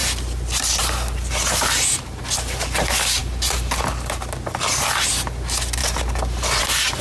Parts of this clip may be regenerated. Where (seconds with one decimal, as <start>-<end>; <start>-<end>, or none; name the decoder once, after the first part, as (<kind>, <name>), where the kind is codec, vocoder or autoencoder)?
none